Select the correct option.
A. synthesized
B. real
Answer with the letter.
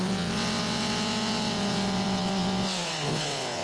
A